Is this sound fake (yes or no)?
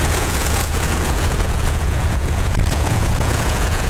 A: yes